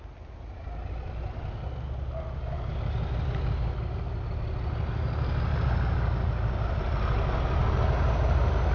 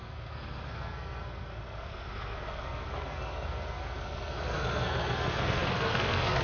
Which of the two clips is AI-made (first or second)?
second